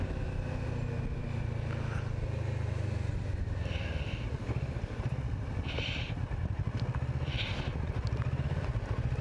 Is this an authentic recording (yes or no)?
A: yes